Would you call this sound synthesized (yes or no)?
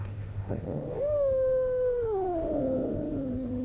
yes